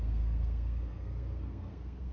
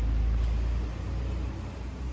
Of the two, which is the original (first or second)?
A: second